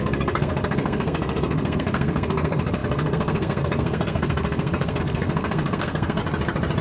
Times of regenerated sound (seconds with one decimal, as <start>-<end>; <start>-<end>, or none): 0.0-6.2